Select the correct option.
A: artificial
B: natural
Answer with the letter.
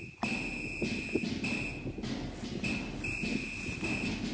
B